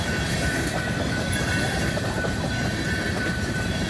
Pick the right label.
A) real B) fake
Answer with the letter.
B